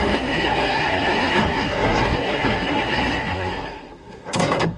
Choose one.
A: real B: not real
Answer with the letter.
B